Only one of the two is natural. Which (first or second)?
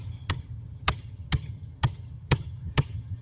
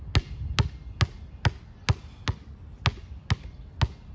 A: second